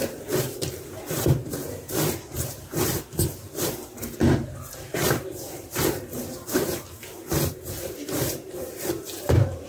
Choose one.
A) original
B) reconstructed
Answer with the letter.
B